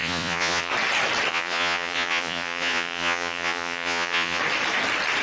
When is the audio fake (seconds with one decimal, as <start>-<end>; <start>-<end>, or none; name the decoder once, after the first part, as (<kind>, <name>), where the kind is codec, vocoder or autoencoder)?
0.0-0.7 (vocoder, Vocos); 1.3-4.4